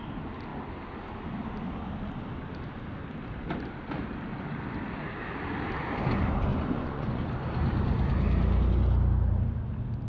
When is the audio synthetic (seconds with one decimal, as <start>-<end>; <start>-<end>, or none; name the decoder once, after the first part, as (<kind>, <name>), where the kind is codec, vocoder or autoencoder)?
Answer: 6.5-7.2 (vocoder, Vocos)